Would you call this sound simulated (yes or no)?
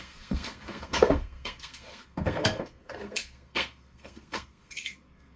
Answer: yes